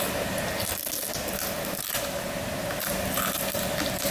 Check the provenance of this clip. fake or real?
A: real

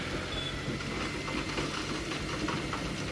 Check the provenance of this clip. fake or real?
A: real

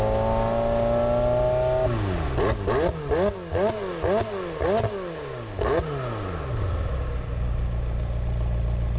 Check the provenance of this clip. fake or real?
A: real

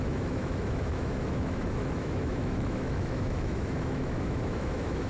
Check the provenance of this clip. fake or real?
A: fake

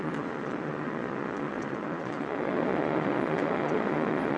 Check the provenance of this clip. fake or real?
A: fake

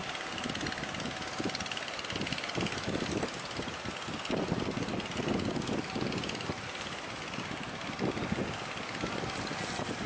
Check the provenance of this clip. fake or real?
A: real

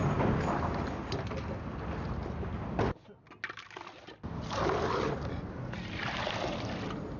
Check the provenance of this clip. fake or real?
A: real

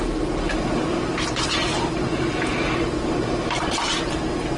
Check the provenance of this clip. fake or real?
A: real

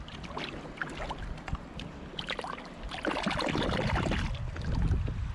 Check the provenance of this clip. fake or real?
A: real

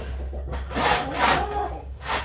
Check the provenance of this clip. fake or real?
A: real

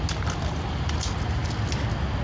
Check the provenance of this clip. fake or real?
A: real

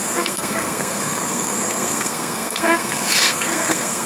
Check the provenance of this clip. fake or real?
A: fake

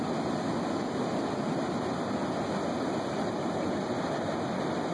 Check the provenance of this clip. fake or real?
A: real